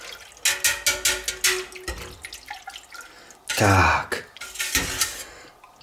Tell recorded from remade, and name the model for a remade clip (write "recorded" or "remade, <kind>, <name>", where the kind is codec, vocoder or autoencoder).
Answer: recorded